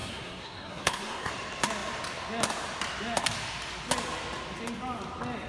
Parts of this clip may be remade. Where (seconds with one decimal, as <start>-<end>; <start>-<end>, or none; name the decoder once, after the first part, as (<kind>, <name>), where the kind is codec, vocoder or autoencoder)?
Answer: 0.0-1.3 (codec, SNAC)

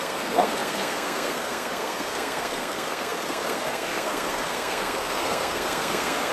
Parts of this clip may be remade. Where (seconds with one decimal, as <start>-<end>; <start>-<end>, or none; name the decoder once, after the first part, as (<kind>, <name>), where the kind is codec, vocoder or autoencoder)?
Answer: 0.0-6.3 (codec, SNAC)

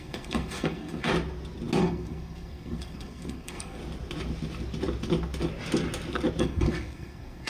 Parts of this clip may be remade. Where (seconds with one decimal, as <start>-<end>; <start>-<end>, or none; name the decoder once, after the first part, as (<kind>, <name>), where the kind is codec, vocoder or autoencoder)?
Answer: 0.0-1.1 (codec, SNAC); 1.8-3.8; 6.4-7.5

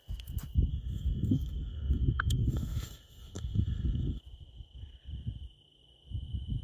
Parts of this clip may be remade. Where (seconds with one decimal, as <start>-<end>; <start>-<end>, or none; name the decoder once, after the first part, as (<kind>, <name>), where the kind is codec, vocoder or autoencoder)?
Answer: 0.7-4.2 (codec, SNAC)

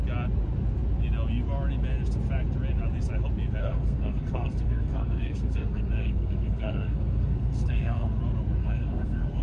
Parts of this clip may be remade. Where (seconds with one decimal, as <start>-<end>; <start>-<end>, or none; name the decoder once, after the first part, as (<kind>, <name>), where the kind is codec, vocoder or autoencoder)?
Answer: 3.6-8.2 (codec, SNAC); 8.6-9.4

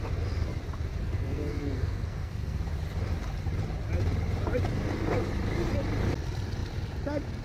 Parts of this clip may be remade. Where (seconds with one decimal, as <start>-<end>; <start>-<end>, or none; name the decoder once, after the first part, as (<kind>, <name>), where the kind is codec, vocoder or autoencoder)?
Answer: 1.0-2.6 (codec, SNAC)

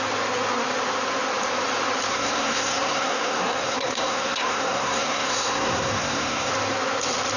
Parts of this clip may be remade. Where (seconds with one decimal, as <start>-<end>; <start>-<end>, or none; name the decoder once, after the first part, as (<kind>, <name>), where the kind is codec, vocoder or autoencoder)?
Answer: 2.1-6.5 (codec, SNAC)

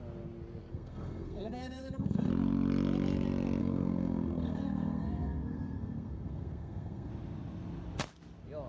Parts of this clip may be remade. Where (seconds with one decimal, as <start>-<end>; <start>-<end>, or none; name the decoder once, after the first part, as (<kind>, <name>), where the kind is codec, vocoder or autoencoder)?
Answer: 0.7-2.3 (codec, SNAC); 3.6-7.1